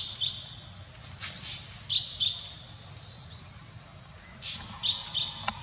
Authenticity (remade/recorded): recorded